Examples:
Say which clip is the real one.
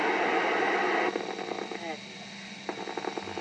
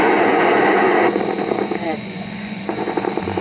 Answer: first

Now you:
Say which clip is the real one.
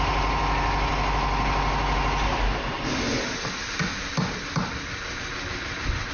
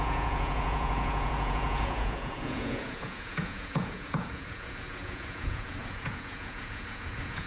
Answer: first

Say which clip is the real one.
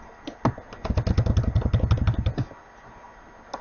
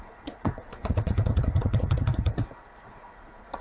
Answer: first